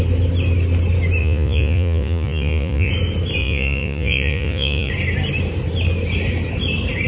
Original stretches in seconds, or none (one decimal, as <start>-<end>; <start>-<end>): 0.0-1.2; 2.9-3.4; 4.9-7.1